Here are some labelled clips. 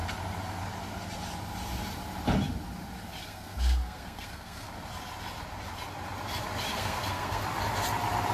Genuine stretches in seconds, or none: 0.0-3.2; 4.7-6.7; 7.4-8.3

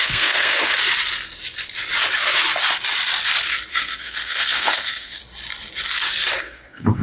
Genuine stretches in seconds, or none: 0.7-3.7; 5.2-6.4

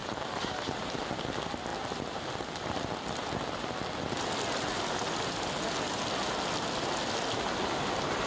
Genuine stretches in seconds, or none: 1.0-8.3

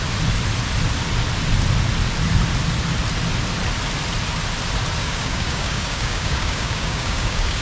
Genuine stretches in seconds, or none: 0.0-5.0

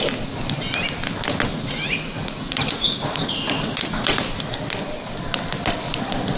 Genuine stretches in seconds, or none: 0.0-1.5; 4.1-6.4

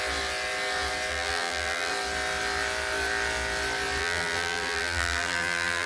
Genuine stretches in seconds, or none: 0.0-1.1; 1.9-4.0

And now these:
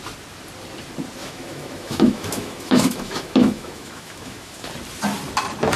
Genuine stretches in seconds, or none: 0.0-1.2; 4.7-5.8

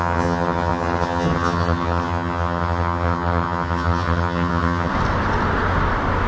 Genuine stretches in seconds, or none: 4.9-6.3